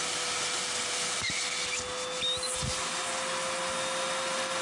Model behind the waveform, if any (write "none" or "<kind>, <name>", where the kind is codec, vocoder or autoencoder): none